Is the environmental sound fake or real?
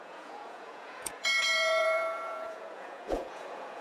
fake